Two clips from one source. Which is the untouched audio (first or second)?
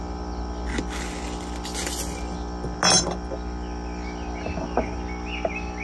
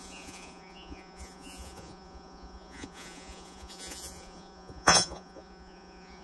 first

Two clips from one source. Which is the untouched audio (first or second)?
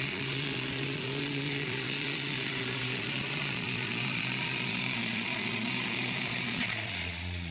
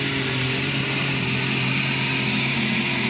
second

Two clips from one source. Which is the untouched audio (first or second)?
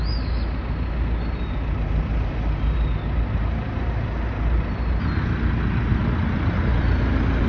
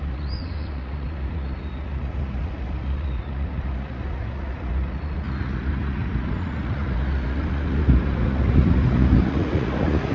first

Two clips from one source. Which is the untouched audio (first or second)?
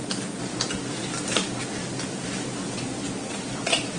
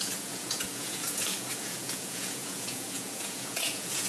first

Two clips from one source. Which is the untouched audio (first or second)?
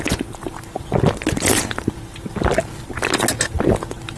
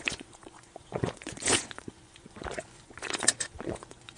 first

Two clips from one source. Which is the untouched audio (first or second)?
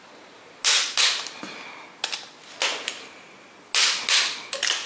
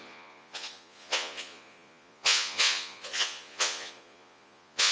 first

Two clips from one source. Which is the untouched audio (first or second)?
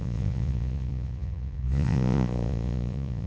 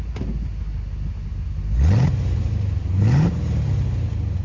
second